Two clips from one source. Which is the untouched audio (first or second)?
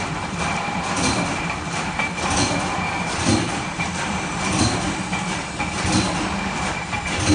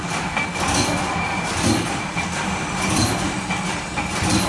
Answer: second